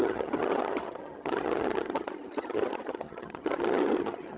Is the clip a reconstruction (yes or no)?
yes